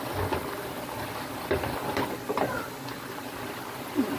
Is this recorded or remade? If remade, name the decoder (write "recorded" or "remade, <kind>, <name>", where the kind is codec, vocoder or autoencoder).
recorded